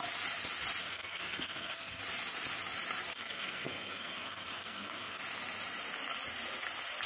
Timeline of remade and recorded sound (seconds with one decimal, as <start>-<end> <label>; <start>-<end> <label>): 0.0-0.8 recorded; 0.8-2.0 remade; 2.0-3.1 recorded; 3.1-5.2 remade; 5.2-7.1 recorded